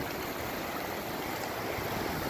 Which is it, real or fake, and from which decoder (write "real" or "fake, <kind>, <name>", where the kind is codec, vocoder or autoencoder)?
real